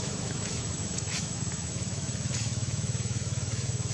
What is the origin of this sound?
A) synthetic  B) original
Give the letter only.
A